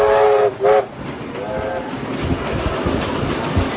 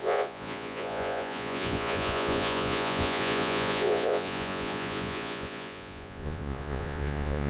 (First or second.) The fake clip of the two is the second